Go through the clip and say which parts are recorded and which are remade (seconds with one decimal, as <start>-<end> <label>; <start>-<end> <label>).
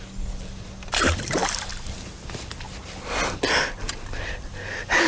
0.0-5.1 recorded